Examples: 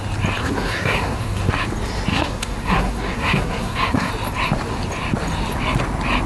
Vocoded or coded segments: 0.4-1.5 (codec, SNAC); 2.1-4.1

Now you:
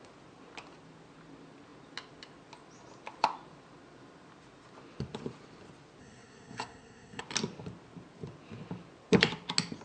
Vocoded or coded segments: 6.0-7.2 (codec, SNAC)

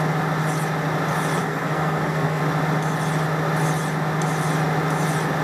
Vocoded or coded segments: 1.4-2.4 (codec, SNAC)